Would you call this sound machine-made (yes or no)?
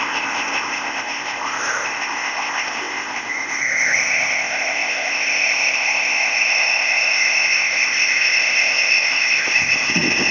yes